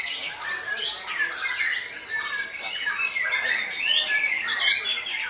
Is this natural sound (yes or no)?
yes